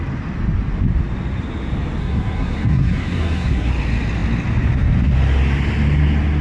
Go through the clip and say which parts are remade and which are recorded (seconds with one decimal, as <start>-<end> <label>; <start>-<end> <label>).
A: 0.0-2.0 recorded; 2.0-3.7 remade; 3.7-6.4 recorded